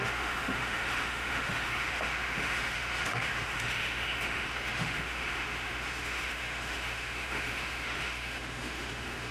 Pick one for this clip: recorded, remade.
remade